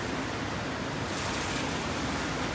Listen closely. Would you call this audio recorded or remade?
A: recorded